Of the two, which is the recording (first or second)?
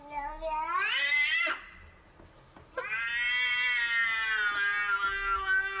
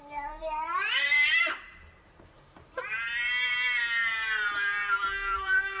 first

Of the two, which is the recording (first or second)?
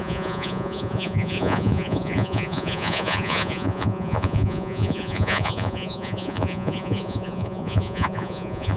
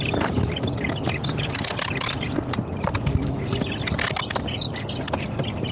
second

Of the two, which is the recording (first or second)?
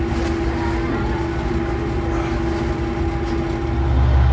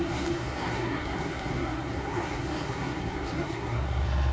first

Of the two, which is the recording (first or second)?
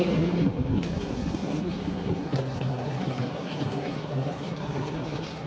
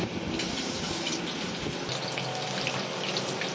second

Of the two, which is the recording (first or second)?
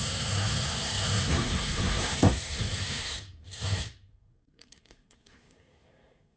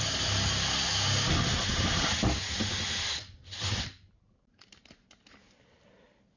second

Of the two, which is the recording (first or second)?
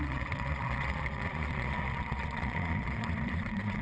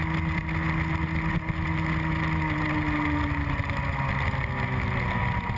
second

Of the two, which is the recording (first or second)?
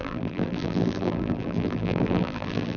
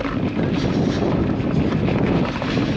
second